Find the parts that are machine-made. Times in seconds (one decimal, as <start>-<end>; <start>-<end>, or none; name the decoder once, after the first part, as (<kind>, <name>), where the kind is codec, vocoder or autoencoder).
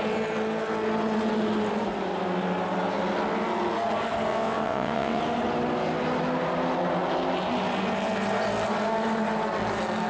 4.3-5.2 (vocoder, WaveNeXt)